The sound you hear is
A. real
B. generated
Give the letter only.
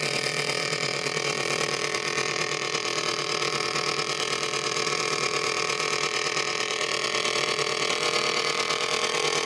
B